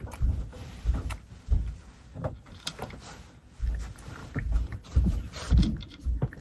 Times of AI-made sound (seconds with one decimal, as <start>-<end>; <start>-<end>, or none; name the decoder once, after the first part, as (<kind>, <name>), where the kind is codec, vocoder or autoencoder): 0.6-1.2 (vocoder, BigVGAN v2); 4.2-5.6